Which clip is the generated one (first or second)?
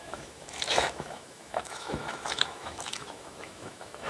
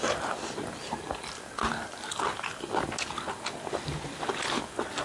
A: first